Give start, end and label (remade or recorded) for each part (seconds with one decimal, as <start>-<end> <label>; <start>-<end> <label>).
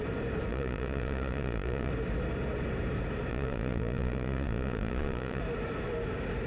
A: 0.0-0.5 recorded; 0.5-1.9 remade; 1.9-3.3 recorded; 3.3-5.4 remade; 5.4-6.5 recorded